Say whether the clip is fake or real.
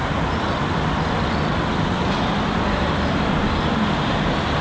real